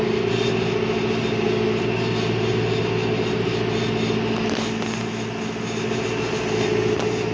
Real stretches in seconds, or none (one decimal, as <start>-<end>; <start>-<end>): 0.0-7.3